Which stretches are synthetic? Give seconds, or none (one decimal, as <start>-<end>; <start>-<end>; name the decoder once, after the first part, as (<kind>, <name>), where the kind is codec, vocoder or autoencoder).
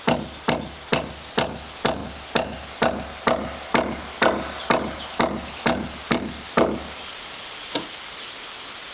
none